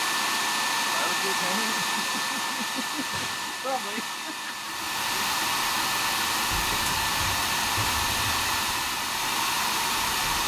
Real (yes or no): no